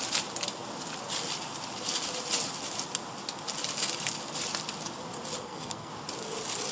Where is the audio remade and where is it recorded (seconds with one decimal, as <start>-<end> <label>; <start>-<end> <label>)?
0.0-5.4 recorded; 5.4-5.9 remade; 5.9-6.7 recorded